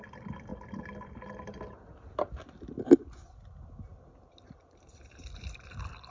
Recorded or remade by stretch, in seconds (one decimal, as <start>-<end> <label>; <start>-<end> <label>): 0.0-6.1 recorded